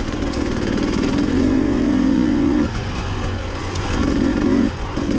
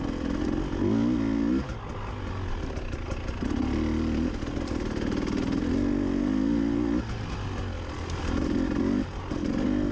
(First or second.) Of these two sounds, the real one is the second